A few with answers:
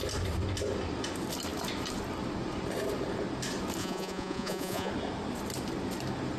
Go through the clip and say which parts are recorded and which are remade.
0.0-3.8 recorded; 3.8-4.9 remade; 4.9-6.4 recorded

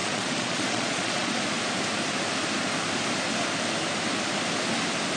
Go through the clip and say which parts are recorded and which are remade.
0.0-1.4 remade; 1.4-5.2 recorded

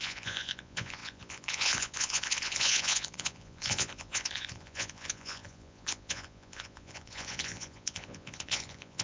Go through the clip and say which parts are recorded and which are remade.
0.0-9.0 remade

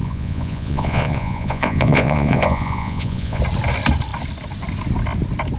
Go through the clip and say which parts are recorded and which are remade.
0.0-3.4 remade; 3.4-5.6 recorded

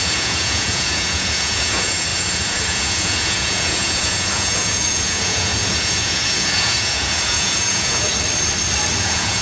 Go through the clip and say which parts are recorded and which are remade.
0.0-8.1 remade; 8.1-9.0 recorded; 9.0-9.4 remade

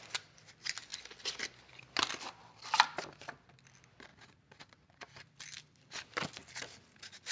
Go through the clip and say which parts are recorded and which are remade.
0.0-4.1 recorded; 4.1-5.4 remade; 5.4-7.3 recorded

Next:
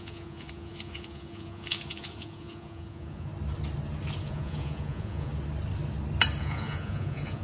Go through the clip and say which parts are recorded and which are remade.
0.0-3.3 remade; 3.3-4.2 recorded; 4.2-5.3 remade; 5.3-6.4 recorded; 6.4-7.4 remade